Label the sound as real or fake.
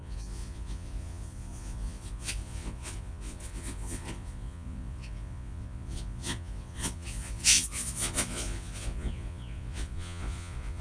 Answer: fake